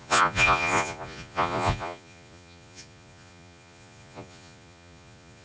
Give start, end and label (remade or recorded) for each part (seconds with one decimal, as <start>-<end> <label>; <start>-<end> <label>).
0.0-5.4 remade